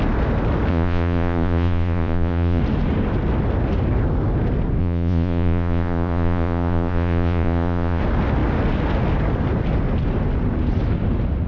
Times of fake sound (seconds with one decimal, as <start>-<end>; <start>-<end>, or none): 0.7-2.6; 4.8-8.0